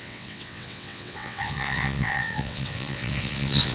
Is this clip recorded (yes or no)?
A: no